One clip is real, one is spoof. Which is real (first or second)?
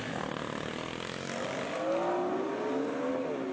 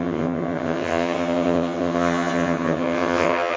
first